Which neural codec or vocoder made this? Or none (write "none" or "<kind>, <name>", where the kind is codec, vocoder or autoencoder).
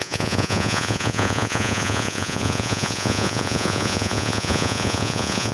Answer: vocoder, Vocos